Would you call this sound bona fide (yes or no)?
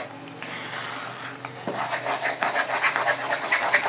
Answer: yes